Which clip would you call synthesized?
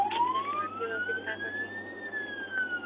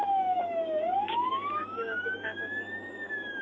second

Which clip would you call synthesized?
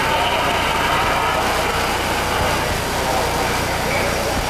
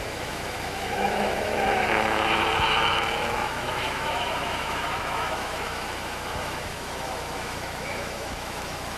second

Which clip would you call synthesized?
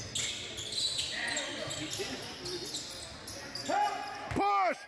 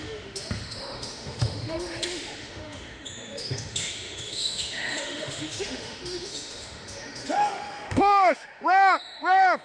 second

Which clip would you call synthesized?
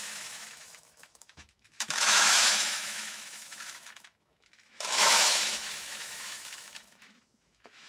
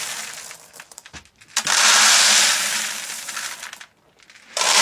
first